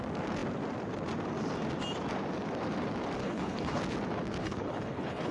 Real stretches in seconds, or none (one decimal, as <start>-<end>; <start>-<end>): 0.0-3.2; 3.8-4.4